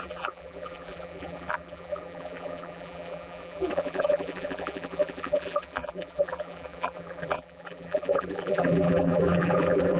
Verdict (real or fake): fake